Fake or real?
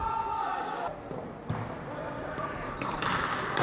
real